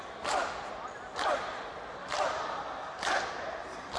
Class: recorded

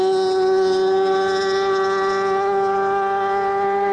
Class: recorded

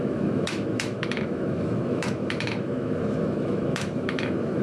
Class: remade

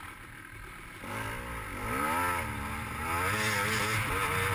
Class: recorded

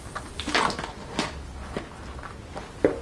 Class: recorded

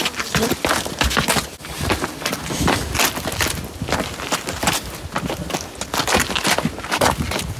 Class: recorded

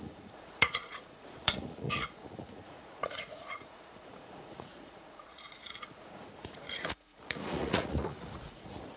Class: remade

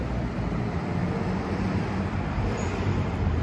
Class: remade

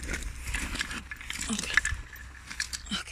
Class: recorded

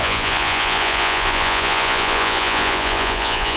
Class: remade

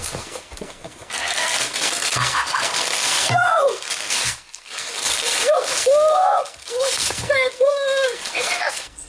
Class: remade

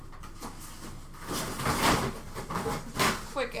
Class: recorded